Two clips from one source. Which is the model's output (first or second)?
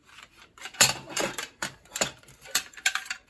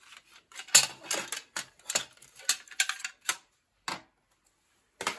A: first